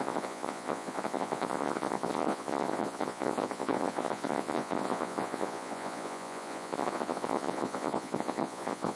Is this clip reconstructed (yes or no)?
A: yes